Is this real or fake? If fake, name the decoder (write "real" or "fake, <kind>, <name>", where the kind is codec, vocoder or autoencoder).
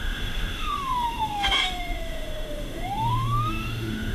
fake, autoencoder, DAC-VAE